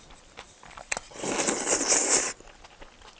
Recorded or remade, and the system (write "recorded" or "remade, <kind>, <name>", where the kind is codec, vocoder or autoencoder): recorded